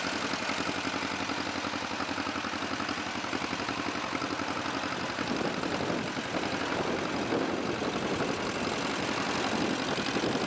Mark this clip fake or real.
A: real